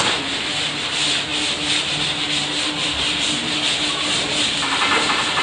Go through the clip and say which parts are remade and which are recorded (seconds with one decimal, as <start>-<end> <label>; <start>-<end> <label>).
0.0-5.4 recorded